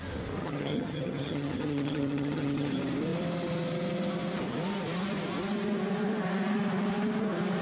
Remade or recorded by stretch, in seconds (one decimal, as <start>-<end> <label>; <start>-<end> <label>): 0.0-0.4 recorded; 0.4-2.7 remade; 2.7-7.6 recorded